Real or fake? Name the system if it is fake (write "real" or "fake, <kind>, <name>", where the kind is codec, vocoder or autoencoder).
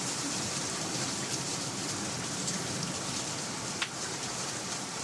fake, vocoder, BigVGAN v2